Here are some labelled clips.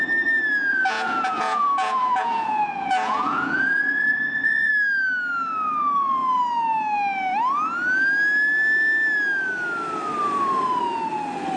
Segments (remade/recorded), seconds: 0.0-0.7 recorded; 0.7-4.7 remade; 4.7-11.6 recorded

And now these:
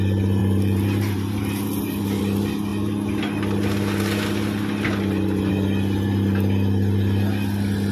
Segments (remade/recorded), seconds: 0.0-0.4 recorded; 0.4-2.2 remade; 2.2-7.9 recorded

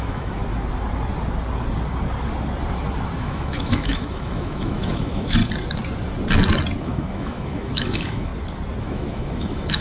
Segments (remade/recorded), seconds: 0.0-0.4 remade; 0.4-3.2 recorded; 3.2-5.4 remade; 5.4-6.8 recorded; 6.8-8.3 remade; 8.3-8.8 recorded; 8.8-9.8 remade

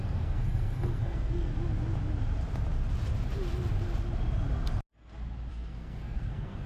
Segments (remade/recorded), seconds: 0.0-1.5 remade; 1.5-5.5 recorded; 5.5-6.7 remade

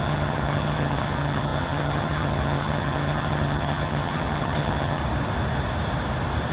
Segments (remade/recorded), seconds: 0.0-5.0 remade; 5.0-6.5 recorded

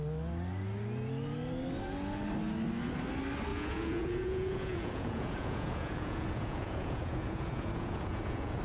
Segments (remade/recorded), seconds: 0.0-3.5 recorded; 3.5-8.6 remade

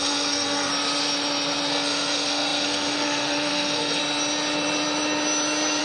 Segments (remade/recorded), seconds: 0.0-0.7 remade; 0.7-1.7 recorded; 1.7-4.0 remade; 4.0-5.8 recorded